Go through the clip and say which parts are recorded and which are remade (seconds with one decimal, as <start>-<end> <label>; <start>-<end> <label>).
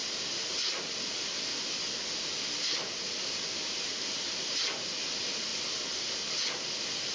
0.0-7.1 recorded